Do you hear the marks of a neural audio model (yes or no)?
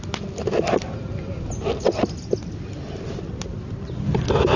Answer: no